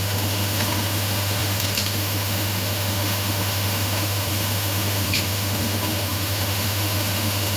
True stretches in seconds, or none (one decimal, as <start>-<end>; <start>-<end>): none